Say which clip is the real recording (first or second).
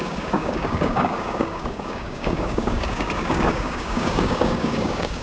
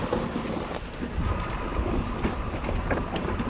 second